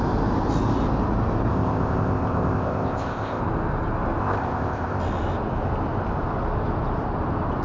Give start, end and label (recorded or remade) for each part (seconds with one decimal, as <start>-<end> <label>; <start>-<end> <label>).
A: 0.0-1.5 recorded; 1.5-3.4 remade; 3.4-4.2 recorded; 4.2-5.0 remade; 5.0-7.6 recorded